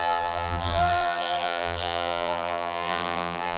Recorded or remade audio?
remade